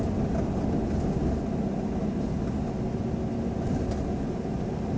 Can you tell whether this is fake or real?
real